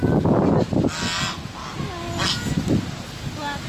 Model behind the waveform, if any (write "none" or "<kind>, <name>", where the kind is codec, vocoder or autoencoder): none